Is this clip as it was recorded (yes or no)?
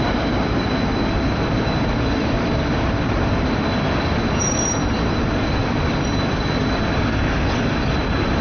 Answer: yes